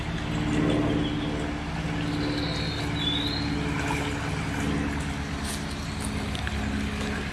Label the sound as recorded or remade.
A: recorded